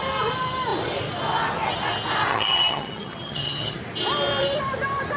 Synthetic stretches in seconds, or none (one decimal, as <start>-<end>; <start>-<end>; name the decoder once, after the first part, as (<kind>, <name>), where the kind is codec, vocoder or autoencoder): 2.3-3.8 (vocoder, HiFi-GAN)